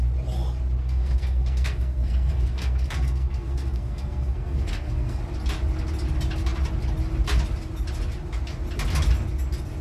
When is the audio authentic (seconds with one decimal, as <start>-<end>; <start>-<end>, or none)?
0.0-0.8; 5.2-9.8